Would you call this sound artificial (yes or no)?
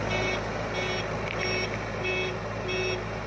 no